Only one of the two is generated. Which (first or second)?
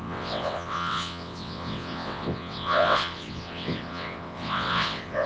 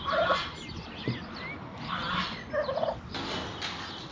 first